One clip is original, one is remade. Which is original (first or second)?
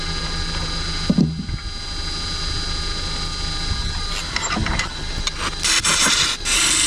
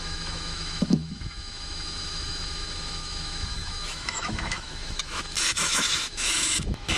first